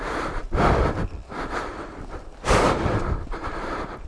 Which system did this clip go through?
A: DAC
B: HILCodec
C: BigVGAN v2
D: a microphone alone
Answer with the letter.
C